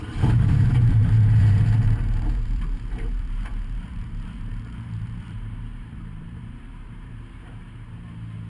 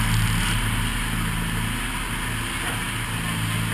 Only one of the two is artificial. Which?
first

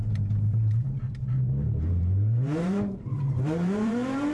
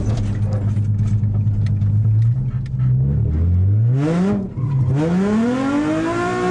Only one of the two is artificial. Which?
first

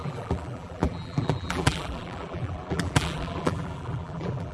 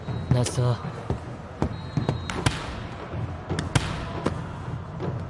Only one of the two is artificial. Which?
first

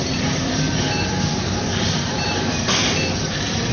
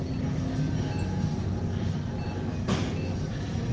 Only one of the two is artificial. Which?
first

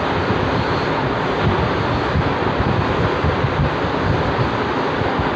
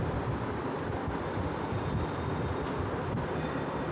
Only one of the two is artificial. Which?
second